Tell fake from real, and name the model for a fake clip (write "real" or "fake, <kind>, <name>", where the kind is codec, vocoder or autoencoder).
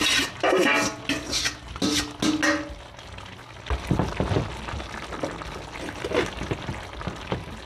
real